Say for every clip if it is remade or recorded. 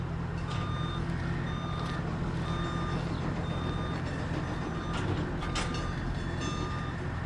recorded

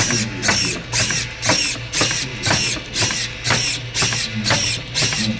recorded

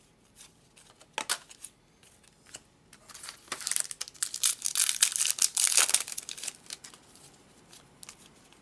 recorded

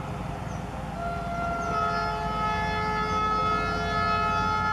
recorded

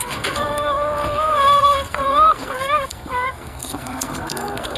remade